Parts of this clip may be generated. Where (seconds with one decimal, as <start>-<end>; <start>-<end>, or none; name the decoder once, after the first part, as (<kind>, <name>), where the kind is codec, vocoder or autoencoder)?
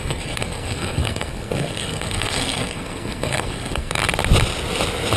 0.0-4.0 (codec, SNAC)